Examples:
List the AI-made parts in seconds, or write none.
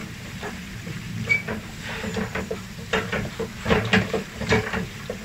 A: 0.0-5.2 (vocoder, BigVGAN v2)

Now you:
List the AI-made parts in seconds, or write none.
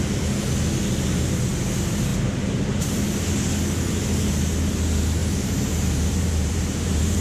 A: 2.1-3.0 (vocoder, BigVGAN v2); 5.2-7.2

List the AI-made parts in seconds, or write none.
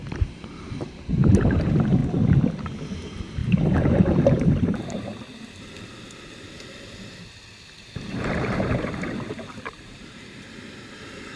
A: 0.0-2.0 (vocoder, BigVGAN v2); 2.9-5.1; 8.1-11.4